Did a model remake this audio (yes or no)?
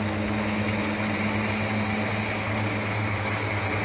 no